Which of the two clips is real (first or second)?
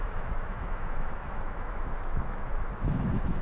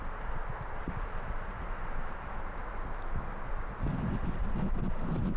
second